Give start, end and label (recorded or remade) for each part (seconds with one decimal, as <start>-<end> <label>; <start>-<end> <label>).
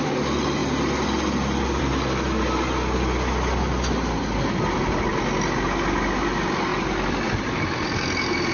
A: 0.0-8.5 recorded